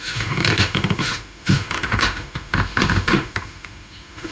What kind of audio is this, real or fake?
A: fake